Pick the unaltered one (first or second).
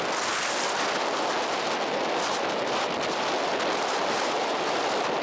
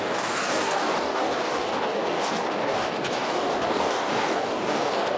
first